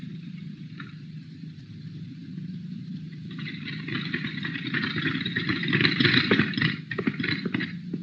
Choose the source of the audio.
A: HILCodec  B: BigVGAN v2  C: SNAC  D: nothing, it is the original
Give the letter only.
B